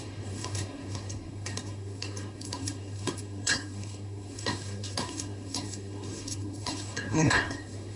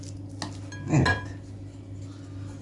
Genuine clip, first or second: second